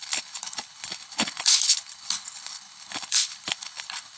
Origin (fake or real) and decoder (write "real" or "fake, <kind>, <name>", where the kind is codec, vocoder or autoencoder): fake, codec, HILCodec